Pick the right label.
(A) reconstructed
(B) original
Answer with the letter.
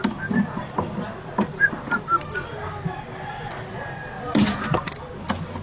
B